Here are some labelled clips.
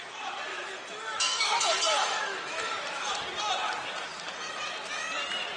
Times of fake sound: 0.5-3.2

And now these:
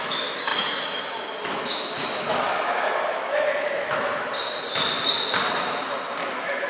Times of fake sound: 0.0-4.1; 6.3-6.7

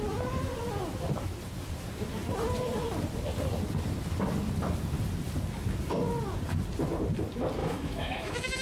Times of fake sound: 7.6-8.6

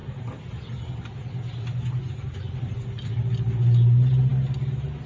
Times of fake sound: none

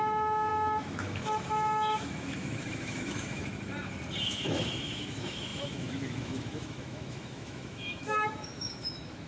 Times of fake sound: 0.0-3.4; 4.2-9.3

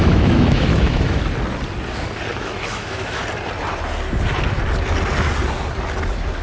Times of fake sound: 0.0-1.2; 2.4-3.2

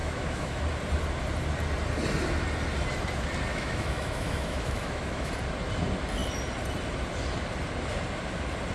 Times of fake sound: 0.0-0.6; 3.5-5.3

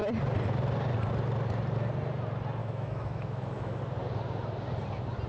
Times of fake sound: 2.6-3.8